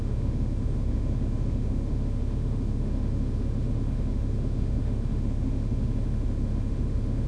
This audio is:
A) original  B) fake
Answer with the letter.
B